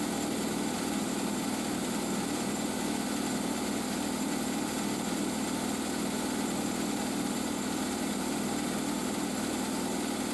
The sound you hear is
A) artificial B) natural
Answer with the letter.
A